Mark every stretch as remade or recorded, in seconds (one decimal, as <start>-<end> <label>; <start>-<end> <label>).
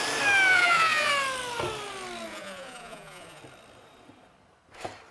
0.0-0.5 recorded; 0.5-1.1 remade; 1.1-2.3 recorded; 2.3-3.4 remade; 3.4-5.1 recorded